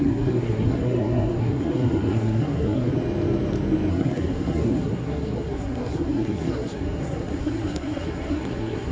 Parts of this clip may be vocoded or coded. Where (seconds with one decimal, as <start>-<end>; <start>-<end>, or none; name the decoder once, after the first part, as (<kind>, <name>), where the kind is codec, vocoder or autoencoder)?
0.0-2.9 (codec, SNAC); 3.9-8.9